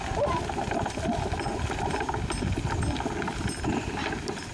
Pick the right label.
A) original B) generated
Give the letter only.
A